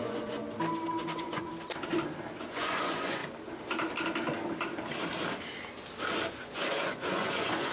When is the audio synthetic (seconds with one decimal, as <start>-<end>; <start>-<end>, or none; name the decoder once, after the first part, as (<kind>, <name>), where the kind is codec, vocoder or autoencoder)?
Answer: 0.0-0.4 (vocoder, Vocos); 1.0-1.5; 2.4-3.2; 6.3-7.7